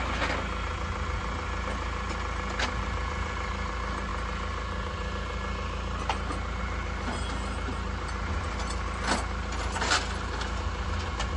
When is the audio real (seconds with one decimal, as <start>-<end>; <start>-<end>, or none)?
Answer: 0.0-11.4